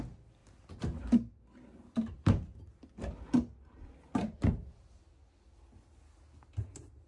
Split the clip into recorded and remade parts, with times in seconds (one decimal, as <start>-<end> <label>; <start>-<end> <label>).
0.0-7.1 recorded